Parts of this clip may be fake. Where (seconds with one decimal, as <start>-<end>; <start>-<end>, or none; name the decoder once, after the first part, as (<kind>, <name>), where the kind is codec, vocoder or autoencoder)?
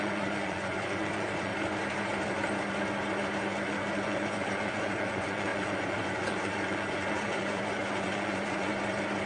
0.0-1.5 (vocoder, Vocos); 3.9-8.7